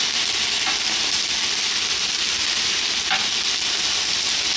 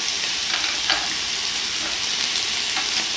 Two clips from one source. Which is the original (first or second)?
first